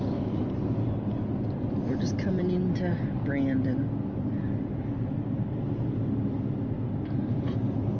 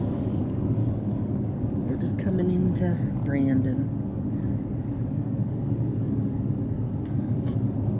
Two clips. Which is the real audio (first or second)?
first